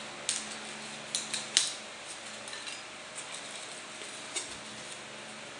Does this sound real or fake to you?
real